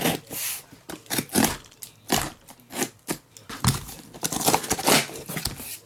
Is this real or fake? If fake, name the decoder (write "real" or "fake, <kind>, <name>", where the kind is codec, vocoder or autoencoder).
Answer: real